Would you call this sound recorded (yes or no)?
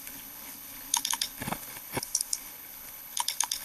no